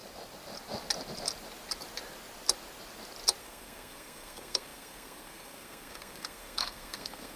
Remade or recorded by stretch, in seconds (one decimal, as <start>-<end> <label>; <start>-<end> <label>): 0.0-3.4 recorded; 3.4-7.4 remade